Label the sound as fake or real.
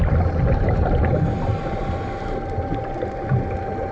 real